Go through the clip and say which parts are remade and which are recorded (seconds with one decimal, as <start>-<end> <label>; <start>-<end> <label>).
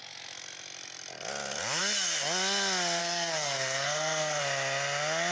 0.0-3.0 recorded; 3.0-4.4 remade; 4.4-5.3 recorded